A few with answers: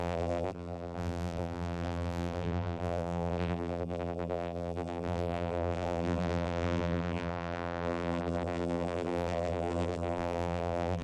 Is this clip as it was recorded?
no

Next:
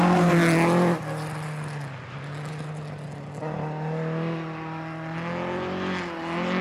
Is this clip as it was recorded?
yes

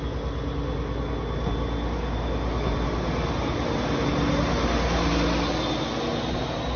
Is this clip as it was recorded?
yes